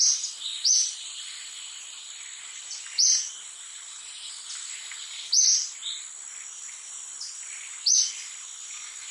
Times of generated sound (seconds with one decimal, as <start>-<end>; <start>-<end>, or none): none